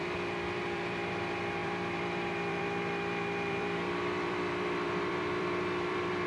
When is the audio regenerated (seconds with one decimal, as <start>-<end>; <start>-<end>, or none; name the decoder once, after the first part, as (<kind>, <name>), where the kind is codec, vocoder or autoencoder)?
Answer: 0.0-6.3 (vocoder, BigVGAN v2)